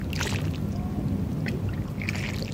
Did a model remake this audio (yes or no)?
no